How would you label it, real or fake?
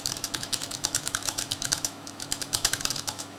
fake